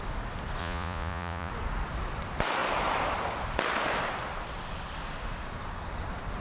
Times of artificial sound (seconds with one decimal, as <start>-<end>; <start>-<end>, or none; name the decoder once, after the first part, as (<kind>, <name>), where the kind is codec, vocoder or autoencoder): 0.6-1.5 (vocoder, Vocos)